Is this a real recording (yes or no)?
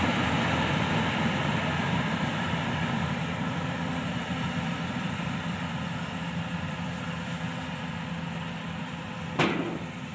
yes